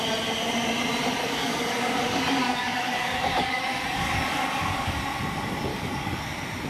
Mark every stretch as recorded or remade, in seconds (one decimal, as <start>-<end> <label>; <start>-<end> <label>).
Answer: 0.0-1.2 recorded; 1.2-5.0 remade; 5.0-5.7 recorded; 5.7-6.2 remade; 6.2-6.7 recorded